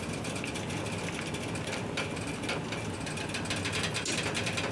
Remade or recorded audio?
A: recorded